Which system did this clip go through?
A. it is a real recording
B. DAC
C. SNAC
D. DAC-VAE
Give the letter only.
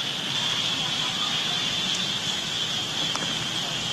A